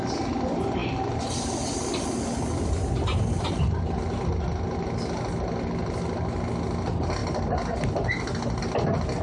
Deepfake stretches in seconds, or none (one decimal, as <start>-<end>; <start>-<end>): none